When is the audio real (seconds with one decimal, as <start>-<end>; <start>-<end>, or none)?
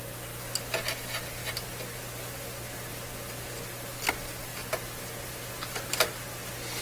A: 0.0-6.8